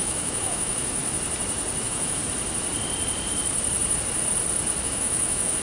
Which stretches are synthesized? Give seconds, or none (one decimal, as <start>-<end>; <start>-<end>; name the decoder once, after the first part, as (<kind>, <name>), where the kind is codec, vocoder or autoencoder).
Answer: 0.0-1.0 (autoencoder, DAC-VAE); 1.8-2.2; 4.8-5.6